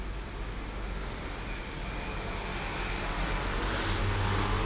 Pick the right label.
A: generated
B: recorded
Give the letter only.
B